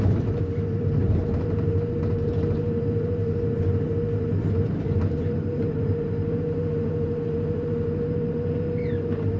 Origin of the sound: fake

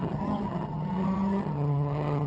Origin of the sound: fake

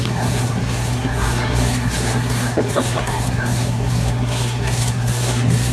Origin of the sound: fake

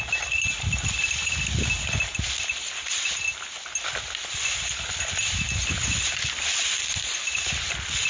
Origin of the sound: real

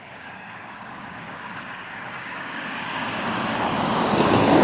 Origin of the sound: fake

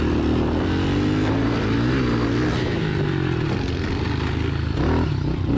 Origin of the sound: real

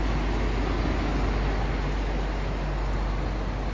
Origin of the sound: real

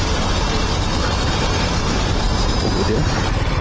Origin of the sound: fake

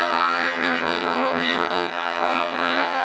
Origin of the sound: fake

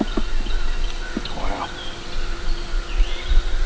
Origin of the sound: real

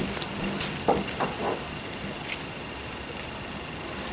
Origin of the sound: real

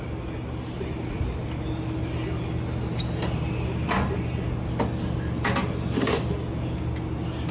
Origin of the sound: real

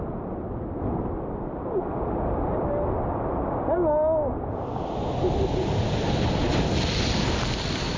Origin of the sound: real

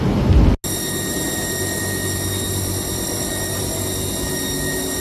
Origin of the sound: real